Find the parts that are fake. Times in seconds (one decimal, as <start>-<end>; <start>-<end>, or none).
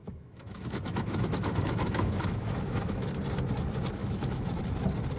0.0-3.1; 4.0-4.6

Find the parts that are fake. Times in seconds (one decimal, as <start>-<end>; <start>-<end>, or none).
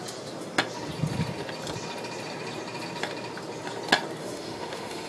4.2-5.1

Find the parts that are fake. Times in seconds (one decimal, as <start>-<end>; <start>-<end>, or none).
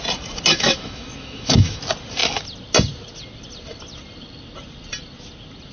0.5-1.8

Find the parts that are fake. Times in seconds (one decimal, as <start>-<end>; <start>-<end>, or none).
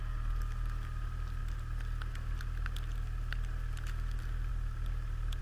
none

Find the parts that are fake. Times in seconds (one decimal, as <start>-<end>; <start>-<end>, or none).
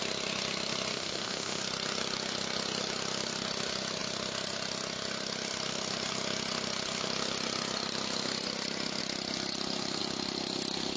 0.9-1.6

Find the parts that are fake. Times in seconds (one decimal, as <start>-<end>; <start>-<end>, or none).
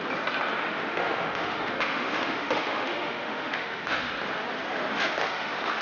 0.6-4.1; 4.9-5.8